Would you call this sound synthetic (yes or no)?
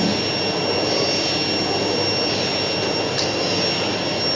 no